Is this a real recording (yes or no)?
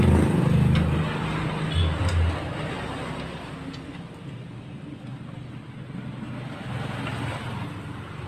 yes